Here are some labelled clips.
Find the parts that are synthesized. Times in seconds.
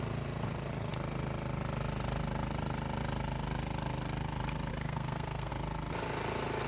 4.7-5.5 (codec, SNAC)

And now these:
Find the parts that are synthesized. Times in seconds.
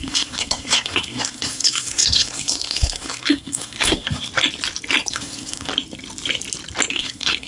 0.0-4.3 (codec, SNAC); 5.1-5.7; 6.9-7.5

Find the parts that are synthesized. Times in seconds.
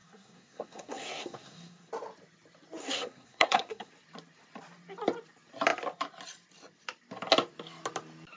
0.0-1.9 (codec, SNAC); 2.8-3.9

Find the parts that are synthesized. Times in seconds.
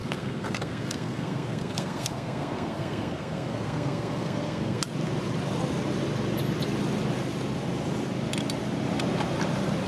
0.0-4.8 (codec, SNAC)